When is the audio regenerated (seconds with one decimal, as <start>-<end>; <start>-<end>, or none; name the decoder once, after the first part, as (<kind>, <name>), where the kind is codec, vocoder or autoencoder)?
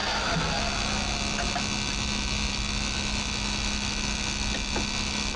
2.5-5.4 (vocoder, BigVGAN v2)